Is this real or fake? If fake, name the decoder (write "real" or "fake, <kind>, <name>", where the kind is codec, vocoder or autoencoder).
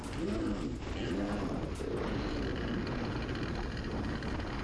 real